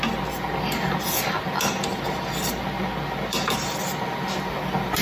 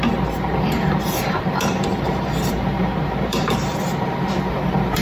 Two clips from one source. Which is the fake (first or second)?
second